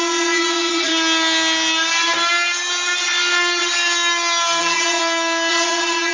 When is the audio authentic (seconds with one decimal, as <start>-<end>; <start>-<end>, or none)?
0.9-4.6; 5.0-5.5